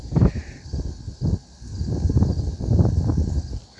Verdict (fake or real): real